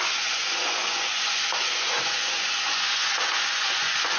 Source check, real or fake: fake